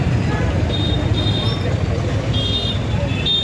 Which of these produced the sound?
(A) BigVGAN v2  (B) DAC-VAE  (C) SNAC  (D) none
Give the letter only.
D